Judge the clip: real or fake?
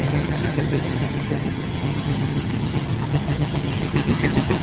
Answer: fake